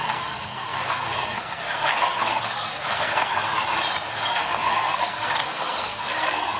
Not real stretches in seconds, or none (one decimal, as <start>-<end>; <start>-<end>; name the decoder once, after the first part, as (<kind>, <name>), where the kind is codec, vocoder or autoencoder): 0.0-3.5 (codec, SNAC); 4.1-6.6